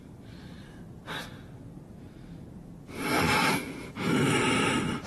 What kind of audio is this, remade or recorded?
recorded